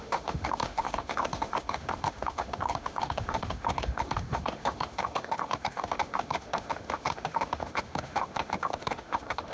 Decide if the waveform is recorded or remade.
remade